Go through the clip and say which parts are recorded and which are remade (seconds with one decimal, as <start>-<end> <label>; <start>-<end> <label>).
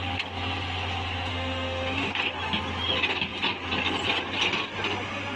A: 0.0-1.3 recorded; 1.3-2.1 remade; 2.1-5.4 recorded